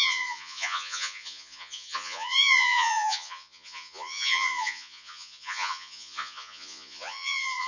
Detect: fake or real fake